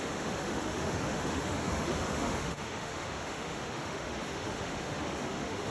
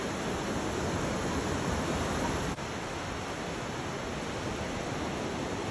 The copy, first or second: first